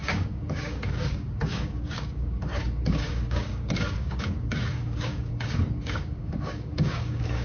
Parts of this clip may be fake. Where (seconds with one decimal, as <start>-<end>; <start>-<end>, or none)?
0.0-7.4